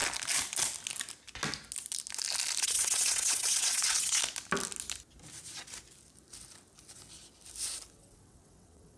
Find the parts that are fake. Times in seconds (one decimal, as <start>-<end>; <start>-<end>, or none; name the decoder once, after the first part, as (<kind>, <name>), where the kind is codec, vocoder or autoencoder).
2.6-4.2 (vocoder, WaveNeXt); 7.9-9.0